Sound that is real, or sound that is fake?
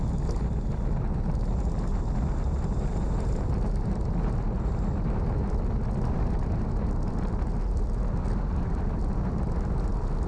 real